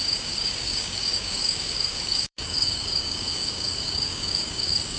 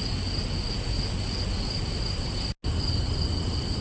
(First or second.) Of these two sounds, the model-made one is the first